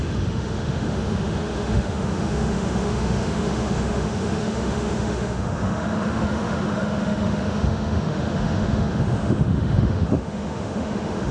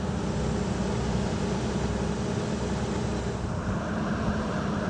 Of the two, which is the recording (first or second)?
second